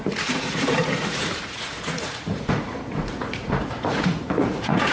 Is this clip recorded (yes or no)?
no